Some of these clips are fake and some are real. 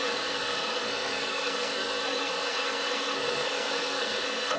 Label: fake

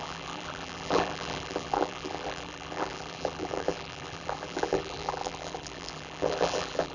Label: fake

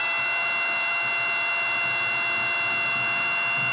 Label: real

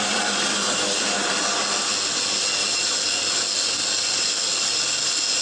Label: real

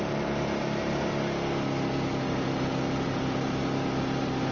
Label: real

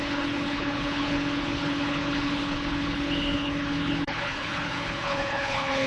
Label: fake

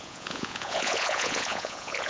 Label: fake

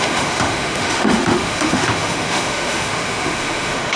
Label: fake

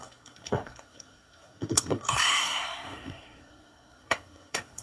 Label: fake